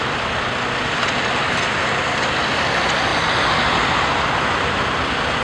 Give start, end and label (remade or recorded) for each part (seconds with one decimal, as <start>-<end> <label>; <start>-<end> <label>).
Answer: 0.0-5.4 recorded